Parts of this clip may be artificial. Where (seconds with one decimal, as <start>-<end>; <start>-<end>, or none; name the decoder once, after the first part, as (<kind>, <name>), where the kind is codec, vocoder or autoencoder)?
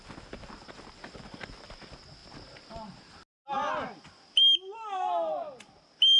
none